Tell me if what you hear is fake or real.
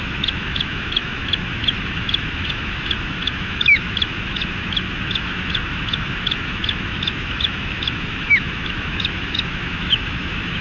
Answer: fake